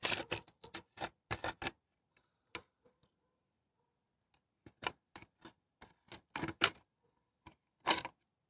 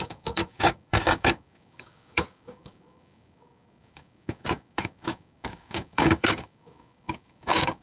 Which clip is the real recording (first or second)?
first